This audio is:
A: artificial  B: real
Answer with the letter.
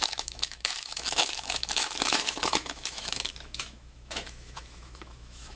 A